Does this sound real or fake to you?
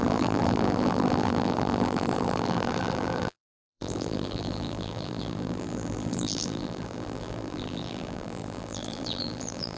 fake